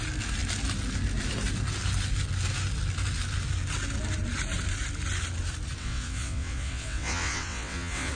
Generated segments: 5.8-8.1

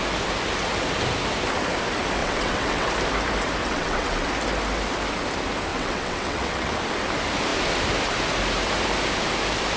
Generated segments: 2.2-2.9; 3.6-4.3; 5.7-6.7

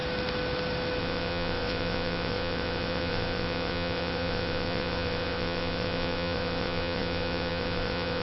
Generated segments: 1.0-8.2

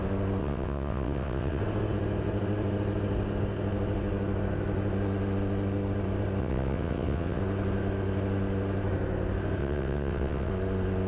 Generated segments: 0.4-1.6; 6.4-7.4; 9.6-10.5

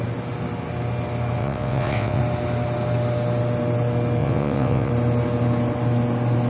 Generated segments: 1.4-2.2; 4.2-4.9

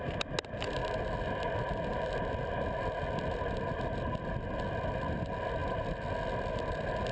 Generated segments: none

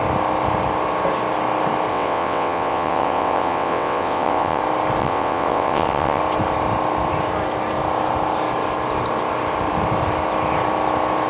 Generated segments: 1.9-4.6; 5.0-6.2